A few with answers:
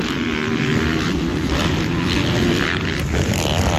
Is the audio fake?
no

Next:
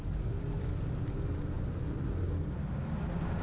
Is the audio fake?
no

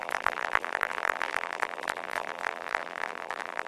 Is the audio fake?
yes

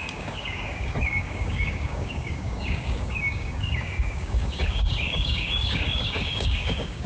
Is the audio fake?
yes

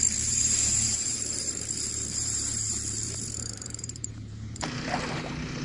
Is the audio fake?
yes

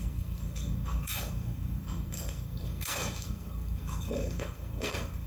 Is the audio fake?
yes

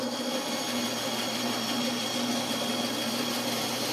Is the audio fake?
no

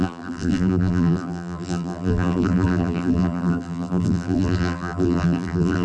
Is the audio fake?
yes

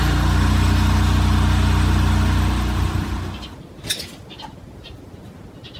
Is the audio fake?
no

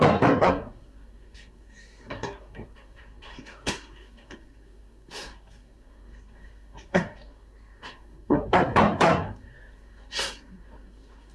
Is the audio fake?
yes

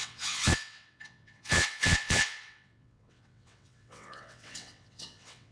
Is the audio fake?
yes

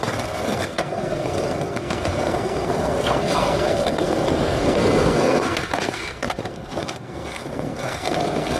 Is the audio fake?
yes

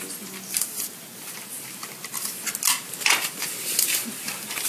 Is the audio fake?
no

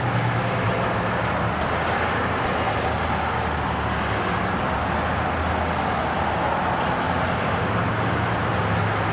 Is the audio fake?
no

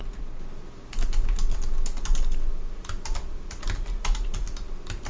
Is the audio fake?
no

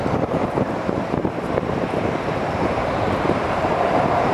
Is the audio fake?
yes